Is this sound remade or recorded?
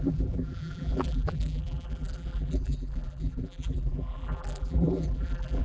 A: remade